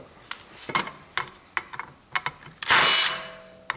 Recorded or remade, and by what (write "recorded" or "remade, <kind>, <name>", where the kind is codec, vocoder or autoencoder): recorded